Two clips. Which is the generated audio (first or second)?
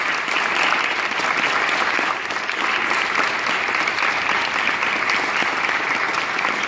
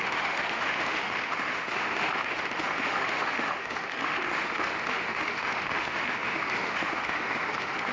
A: second